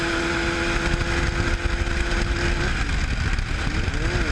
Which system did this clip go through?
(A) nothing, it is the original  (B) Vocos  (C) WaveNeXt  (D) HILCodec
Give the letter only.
A